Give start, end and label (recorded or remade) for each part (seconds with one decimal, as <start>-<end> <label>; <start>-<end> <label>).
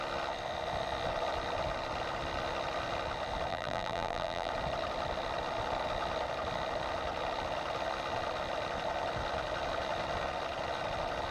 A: 0.0-3.5 recorded; 3.5-4.5 remade; 4.5-11.3 recorded